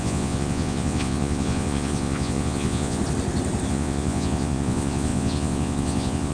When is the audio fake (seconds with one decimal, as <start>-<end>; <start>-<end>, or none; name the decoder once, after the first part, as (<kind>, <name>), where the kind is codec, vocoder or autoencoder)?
0.0-3.0 (vocoder, Vocos); 3.7-6.3